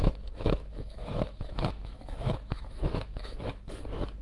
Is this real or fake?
fake